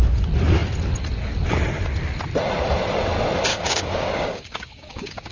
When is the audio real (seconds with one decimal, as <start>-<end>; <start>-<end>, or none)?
0.0-3.5